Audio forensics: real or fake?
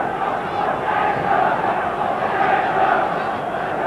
real